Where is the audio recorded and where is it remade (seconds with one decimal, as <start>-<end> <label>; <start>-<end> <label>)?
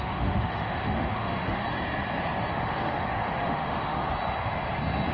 0.0-1.6 remade; 1.6-2.5 recorded; 2.5-4.0 remade; 4.0-5.1 recorded